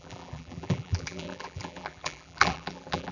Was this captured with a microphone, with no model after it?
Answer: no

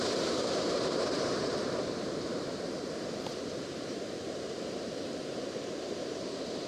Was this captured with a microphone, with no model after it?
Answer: no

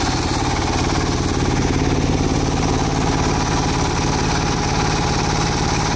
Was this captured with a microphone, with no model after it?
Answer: yes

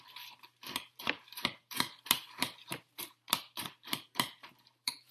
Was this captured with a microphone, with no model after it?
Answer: no